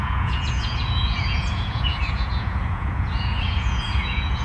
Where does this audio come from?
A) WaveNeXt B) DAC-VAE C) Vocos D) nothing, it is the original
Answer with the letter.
C